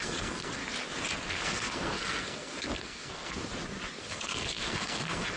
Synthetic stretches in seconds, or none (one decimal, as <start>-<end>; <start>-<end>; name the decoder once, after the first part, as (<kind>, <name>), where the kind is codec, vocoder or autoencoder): 0.0-0.6 (codec, SNAC); 1.3-3.4; 4.0-5.4